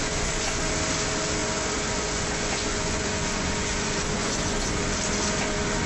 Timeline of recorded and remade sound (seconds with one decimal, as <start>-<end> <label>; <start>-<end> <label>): 0.0-0.7 remade; 0.7-1.4 recorded; 1.4-4.8 remade; 4.8-5.9 recorded